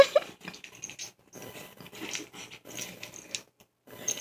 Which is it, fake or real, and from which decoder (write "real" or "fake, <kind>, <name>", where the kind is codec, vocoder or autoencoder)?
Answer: real